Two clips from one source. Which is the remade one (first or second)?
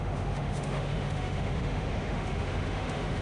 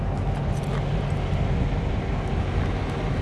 first